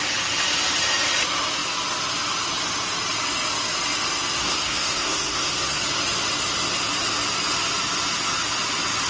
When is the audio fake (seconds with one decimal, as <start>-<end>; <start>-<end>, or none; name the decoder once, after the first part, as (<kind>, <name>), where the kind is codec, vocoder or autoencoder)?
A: 4.4-5.8 (codec, SNAC)